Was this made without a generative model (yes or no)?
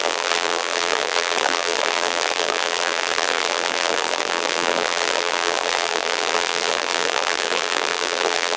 no